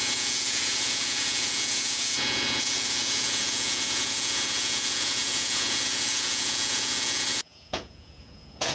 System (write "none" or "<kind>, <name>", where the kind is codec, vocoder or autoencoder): vocoder, Vocos